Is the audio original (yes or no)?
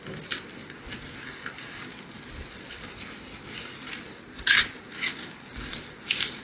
yes